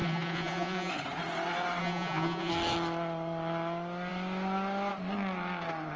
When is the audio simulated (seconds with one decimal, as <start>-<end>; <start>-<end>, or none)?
0.0-0.9; 1.8-2.5